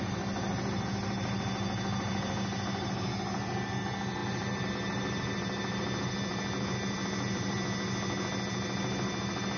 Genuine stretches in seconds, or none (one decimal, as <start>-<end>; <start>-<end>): 0.0-9.6

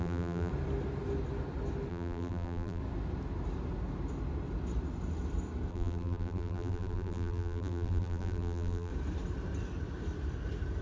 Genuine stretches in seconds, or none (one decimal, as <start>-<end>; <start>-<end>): 0.5-1.9; 2.8-5.7; 8.9-10.8

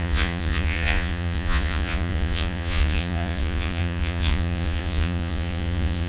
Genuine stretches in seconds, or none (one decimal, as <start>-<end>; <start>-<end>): none

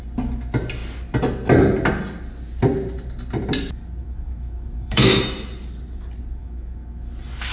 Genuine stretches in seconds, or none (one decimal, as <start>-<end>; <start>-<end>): 0.0-4.0; 5.2-6.4; 7.1-7.5

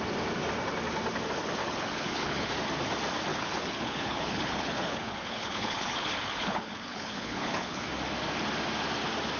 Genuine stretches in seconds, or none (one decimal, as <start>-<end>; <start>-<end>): 0.0-1.6; 2.5-3.3; 7.9-9.4

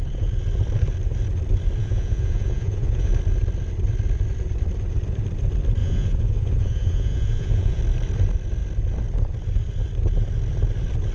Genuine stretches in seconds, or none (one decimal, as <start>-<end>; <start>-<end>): 0.0-1.8; 3.1-5.8; 7.8-11.1

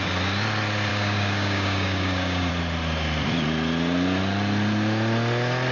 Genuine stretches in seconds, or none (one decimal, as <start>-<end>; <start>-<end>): 0.0-0.9; 2.5-5.7

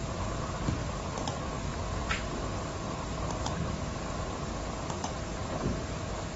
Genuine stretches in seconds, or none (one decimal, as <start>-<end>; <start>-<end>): 0.0-1.7; 5.5-6.4